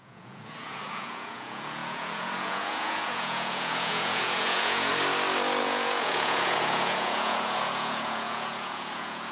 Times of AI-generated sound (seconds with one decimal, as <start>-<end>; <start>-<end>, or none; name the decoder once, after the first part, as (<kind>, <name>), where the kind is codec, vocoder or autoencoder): 0.0-4.9 (vocoder, Vocos); 5.6-9.3